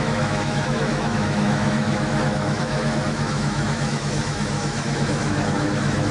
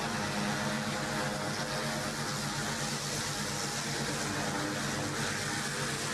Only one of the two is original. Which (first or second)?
second